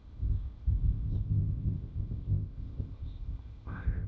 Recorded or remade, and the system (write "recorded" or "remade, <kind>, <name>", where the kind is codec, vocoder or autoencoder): remade, codec, ZipCodec